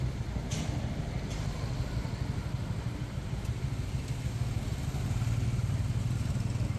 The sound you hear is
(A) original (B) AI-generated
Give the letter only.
A